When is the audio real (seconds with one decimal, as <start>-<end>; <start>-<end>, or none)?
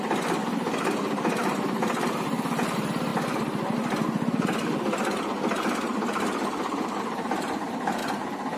3.1-7.0; 8.0-8.6